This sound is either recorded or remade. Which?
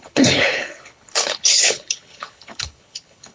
remade